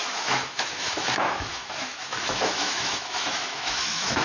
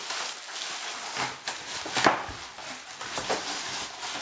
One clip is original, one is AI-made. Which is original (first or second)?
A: second